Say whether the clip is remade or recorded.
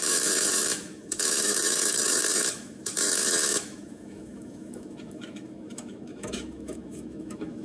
remade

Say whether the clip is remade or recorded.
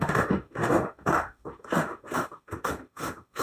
remade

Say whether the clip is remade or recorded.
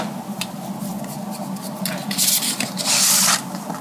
recorded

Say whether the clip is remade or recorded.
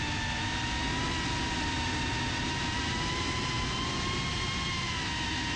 recorded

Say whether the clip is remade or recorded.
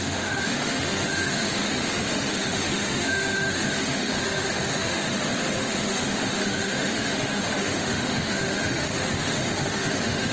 remade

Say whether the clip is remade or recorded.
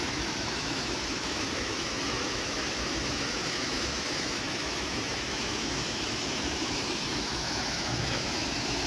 remade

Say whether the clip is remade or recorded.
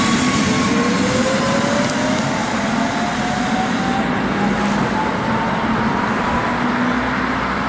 recorded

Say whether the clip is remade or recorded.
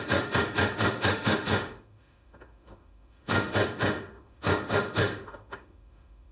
remade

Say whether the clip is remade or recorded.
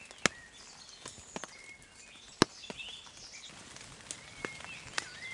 recorded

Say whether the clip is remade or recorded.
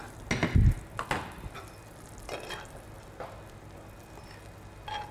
recorded